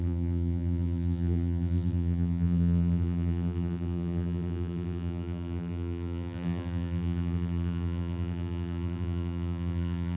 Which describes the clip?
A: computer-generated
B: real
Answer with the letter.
A